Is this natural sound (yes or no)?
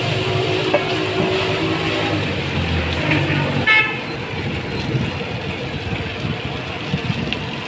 yes